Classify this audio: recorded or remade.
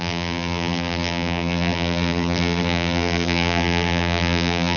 remade